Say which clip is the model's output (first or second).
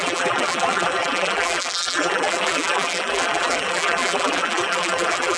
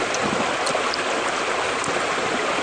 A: first